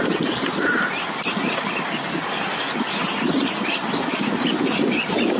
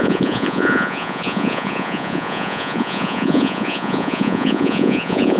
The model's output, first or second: second